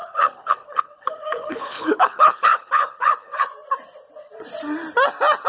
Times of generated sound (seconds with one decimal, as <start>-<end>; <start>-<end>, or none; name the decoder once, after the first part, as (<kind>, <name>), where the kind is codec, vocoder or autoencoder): 0.0-3.5 (codec, HILCodec)

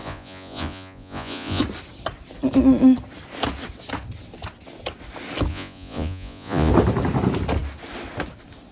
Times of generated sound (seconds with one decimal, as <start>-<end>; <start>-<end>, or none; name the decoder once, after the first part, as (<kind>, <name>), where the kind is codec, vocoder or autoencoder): 0.0-1.6 (vocoder, Vocos); 5.5-6.7